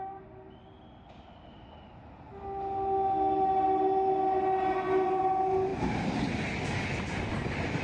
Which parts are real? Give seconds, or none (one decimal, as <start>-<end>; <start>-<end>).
0.0-7.8